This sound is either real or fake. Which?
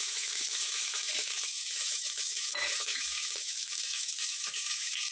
fake